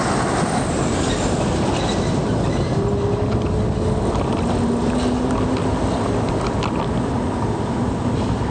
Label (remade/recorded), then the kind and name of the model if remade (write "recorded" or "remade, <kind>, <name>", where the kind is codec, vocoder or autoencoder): recorded